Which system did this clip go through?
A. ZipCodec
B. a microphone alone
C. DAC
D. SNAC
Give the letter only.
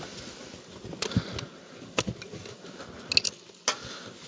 B